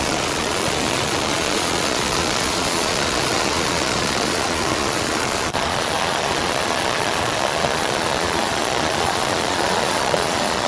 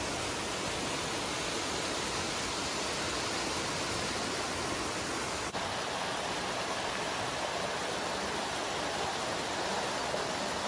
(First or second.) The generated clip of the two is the first